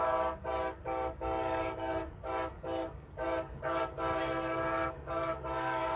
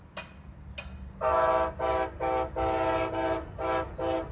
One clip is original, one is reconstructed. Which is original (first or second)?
second